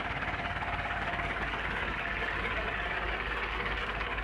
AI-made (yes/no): yes